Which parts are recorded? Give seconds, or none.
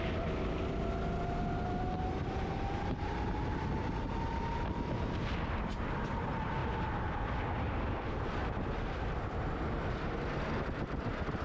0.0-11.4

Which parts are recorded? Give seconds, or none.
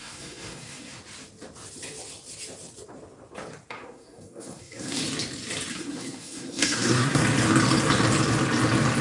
1.0-3.7; 5.0-5.7; 7.2-9.0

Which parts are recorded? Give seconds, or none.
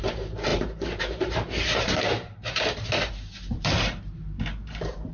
none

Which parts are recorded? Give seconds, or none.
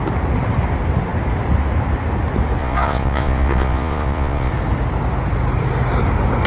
0.0-2.6; 4.5-6.5